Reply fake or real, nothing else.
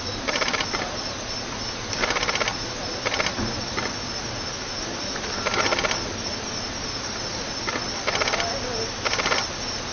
real